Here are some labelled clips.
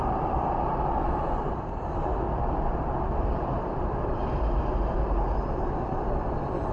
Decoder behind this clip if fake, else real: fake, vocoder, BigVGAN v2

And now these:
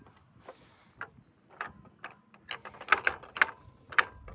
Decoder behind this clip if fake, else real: real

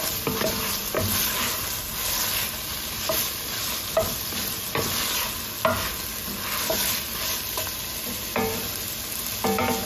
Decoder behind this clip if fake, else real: real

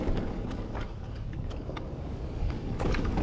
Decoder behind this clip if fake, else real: fake, codec, DAC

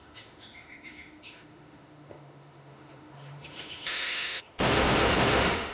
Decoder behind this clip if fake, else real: fake, autoencoder, DAC-VAE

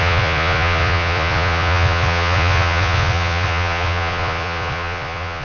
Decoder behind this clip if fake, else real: fake, vocoder, Vocos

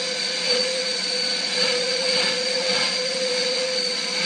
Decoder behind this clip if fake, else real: fake, vocoder, Vocos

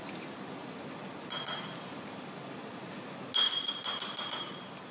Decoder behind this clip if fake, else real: real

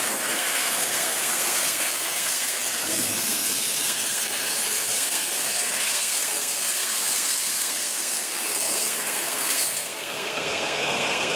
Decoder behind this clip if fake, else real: fake, codec, SNAC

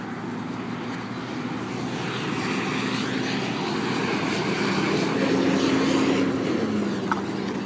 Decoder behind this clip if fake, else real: real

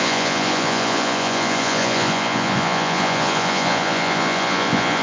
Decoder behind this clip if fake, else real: fake, vocoder, Vocos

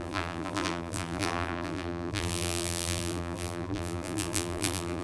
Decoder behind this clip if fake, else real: fake, vocoder, BigVGAN v2